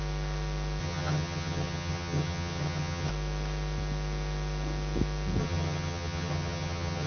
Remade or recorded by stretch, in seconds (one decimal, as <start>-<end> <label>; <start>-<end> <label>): 0.0-0.8 recorded; 0.8-3.1 remade; 3.1-5.4 recorded; 5.4-7.1 remade